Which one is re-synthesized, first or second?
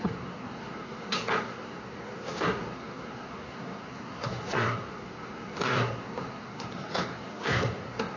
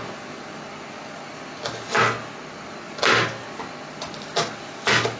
first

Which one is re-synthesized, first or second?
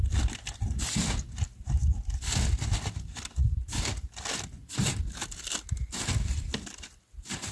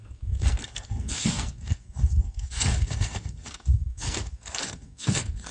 second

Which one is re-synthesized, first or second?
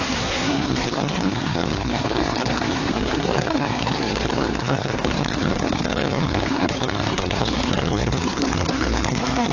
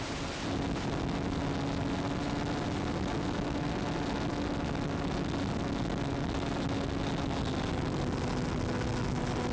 first